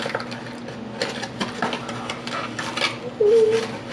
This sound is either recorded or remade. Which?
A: recorded